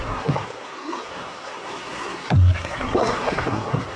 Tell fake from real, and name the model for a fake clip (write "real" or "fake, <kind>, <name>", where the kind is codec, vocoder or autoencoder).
fake, codec, SNAC